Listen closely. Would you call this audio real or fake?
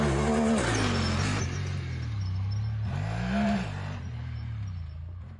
real